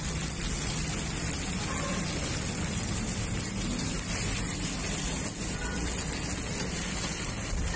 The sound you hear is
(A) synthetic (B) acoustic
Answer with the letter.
B